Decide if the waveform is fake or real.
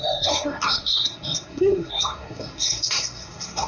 fake